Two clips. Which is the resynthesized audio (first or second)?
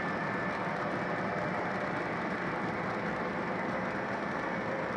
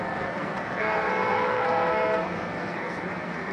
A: second